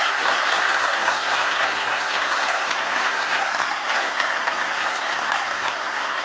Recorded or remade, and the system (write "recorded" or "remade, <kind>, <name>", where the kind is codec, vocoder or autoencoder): remade, codec, SNAC